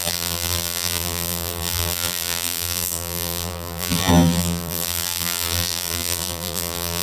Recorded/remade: remade